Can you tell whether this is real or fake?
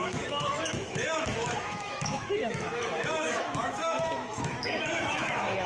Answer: fake